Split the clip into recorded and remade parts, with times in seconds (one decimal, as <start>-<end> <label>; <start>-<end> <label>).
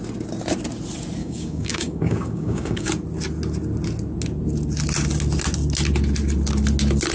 0.0-1.2 recorded; 1.2-2.9 remade; 2.9-7.1 recorded